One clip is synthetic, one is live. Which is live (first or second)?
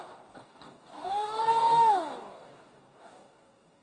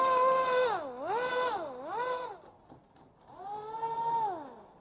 second